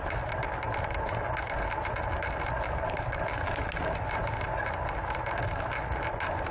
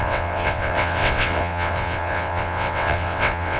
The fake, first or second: second